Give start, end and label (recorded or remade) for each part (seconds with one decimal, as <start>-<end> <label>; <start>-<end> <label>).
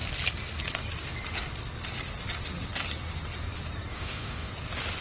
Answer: 0.0-3.9 recorded; 3.9-4.5 remade; 4.5-5.0 recorded